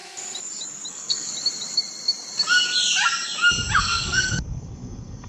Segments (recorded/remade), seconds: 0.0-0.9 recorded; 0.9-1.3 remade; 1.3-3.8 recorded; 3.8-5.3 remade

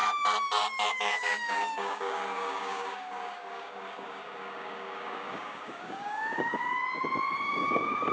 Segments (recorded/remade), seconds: 0.0-0.9 recorded; 0.9-6.8 remade; 6.8-7.4 recorded; 7.4-8.1 remade

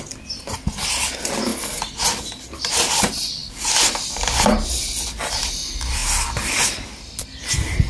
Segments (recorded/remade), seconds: 0.0-7.9 recorded

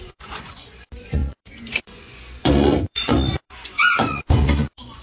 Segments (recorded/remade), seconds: 0.0-5.0 remade

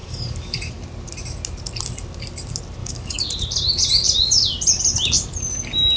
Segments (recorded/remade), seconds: 0.0-0.7 remade; 0.7-2.8 recorded; 2.8-3.3 remade; 3.3-6.0 recorded

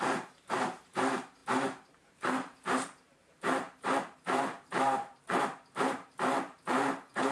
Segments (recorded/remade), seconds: 0.0-7.3 remade